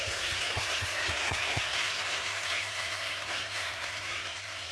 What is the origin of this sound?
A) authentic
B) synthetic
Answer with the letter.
B